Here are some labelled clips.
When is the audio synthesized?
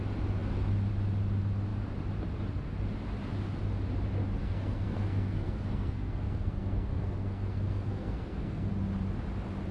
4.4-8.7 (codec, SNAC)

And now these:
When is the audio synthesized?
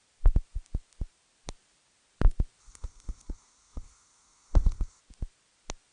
2.6-5.0 (codec, SNAC)